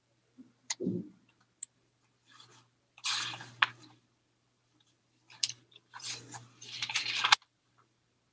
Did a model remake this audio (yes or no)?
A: yes